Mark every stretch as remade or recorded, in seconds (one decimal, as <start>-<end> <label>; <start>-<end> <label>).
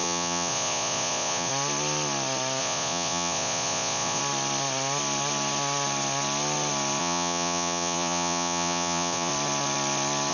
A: 0.0-1.5 remade; 1.5-2.6 recorded; 2.6-4.2 remade; 4.2-7.0 recorded; 7.0-9.3 remade; 9.3-10.3 recorded